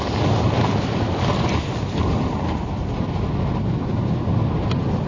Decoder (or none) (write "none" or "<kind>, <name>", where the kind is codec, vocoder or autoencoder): none